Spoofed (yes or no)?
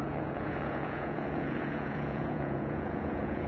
yes